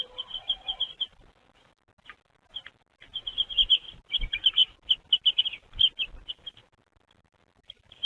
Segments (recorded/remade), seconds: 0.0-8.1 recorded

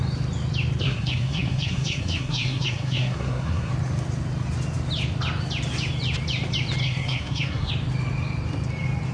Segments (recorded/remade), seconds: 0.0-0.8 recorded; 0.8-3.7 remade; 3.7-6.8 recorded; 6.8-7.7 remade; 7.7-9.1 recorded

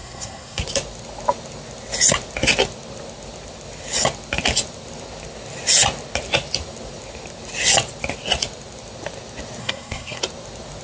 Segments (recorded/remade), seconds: 0.0-0.6 remade; 0.6-9.6 recorded; 9.6-10.2 remade; 10.2-10.8 recorded

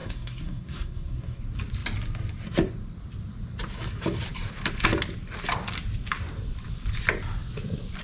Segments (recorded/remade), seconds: 0.0-1.4 remade; 1.4-8.0 recorded

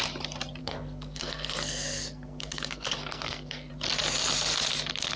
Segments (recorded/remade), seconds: 0.0-0.6 recorded; 0.6-3.7 remade; 3.7-5.2 recorded

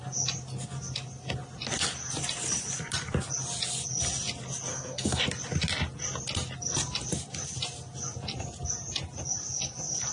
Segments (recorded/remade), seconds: 0.0-4.7 recorded; 4.7-5.2 remade; 5.2-10.1 recorded